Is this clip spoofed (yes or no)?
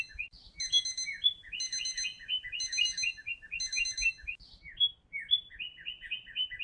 no